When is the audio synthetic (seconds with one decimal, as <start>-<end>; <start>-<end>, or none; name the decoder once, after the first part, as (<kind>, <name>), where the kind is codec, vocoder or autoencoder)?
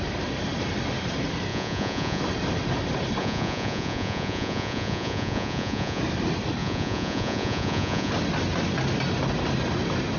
1.5-2.2 (vocoder, Vocos); 3.2-6.0; 6.6-8.1